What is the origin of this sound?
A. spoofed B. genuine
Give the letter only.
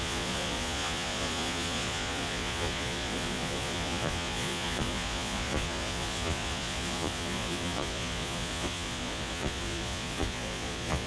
A